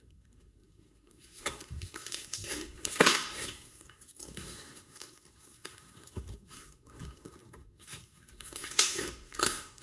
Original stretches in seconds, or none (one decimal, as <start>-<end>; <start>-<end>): none